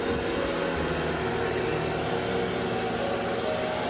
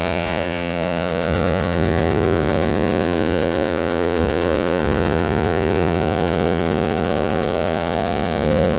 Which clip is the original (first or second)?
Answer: first